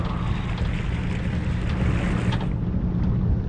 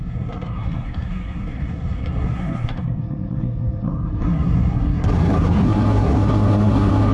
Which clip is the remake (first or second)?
second